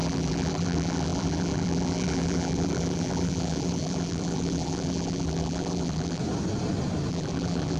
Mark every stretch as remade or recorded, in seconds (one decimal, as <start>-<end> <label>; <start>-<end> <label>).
0.0-6.2 remade; 6.2-7.1 recorded; 7.1-7.8 remade